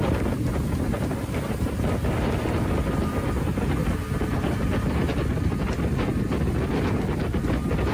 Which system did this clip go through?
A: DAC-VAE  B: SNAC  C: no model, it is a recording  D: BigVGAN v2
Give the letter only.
C